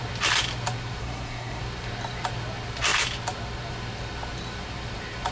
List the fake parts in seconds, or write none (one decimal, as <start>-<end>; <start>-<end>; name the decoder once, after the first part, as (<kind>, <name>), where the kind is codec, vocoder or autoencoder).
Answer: 1.0-1.6 (codec, SNAC)